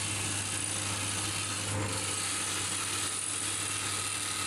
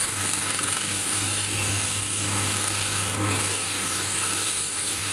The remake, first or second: second